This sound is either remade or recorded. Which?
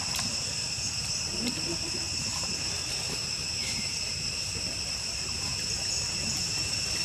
remade